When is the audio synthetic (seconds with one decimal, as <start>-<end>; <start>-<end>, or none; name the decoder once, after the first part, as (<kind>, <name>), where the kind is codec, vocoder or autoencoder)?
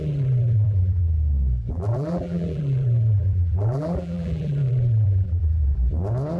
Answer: 0.0-1.0 (vocoder, BigVGAN v2); 1.7-5.9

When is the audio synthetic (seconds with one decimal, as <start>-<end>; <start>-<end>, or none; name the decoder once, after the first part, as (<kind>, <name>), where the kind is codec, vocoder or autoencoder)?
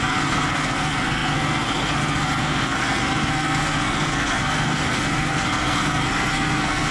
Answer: 0.0-6.9 (codec, SNAC)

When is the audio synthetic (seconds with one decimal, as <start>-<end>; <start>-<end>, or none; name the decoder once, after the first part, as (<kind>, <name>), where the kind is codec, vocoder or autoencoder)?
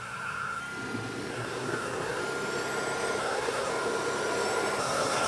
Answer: 0.0-0.6 (codec, SNAC); 1.3-2.2; 3.2-3.7; 4.8-5.3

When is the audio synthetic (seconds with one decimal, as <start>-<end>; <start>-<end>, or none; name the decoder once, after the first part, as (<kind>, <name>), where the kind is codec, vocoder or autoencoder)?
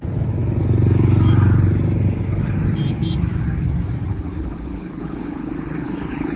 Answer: 4.1-6.4 (codec, HILCodec)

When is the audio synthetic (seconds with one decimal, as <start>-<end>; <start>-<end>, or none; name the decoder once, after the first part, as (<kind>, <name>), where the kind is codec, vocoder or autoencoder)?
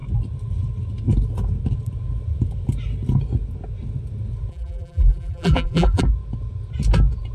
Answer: 4.5-6.0 (vocoder, BigVGAN v2)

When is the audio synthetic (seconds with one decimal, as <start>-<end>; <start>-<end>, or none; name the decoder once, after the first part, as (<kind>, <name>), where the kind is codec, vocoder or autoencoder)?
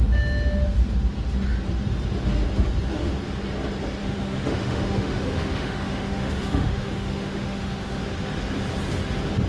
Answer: 4.0-8.0 (autoencoder, DAC-VAE)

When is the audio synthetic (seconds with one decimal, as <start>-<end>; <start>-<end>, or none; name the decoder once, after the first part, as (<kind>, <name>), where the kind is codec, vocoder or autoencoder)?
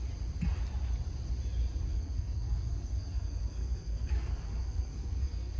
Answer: 1.9-5.6 (codec, SNAC)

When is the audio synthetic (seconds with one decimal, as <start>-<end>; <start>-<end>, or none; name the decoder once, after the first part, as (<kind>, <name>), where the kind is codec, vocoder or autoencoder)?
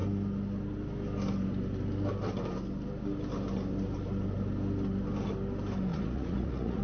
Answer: 5.9-6.8 (vocoder, Vocos)